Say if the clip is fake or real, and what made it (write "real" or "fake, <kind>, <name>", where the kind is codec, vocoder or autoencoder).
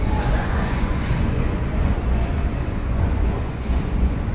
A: fake, vocoder, Vocos